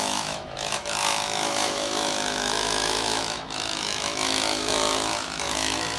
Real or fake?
fake